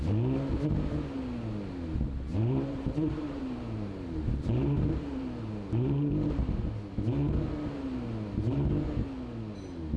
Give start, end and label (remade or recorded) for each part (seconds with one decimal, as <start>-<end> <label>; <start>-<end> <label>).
0.0-2.3 recorded; 2.3-6.4 remade; 6.4-10.0 recorded